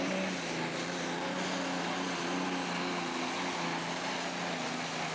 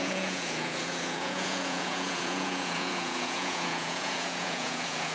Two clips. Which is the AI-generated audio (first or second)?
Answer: second